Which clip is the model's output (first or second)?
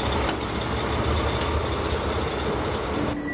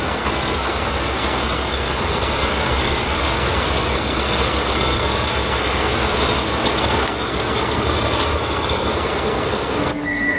second